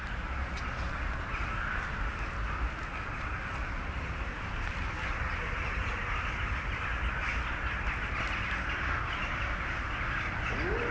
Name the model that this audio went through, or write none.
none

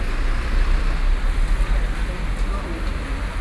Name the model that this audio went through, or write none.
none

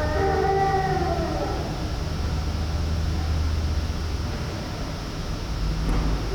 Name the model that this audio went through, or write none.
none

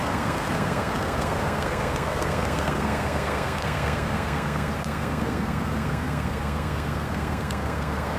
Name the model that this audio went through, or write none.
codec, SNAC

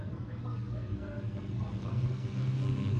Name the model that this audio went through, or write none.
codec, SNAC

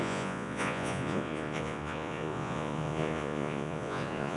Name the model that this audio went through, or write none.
vocoder, Vocos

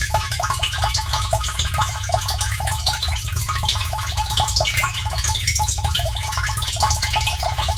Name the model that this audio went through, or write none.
autoencoder, DAC-VAE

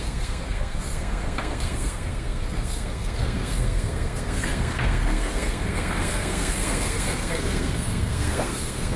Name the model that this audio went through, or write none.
codec, SNAC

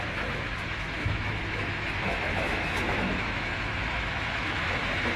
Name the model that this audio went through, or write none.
autoencoder, DAC-VAE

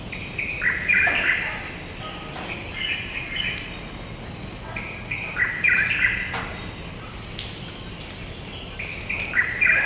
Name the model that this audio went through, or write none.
none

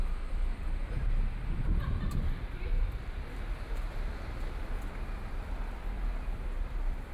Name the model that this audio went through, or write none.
vocoder, BigVGAN v2